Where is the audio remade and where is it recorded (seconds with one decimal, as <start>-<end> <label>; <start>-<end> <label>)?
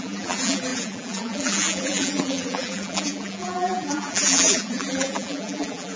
0.0-6.0 remade